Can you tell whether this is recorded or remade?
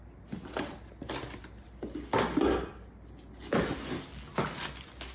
recorded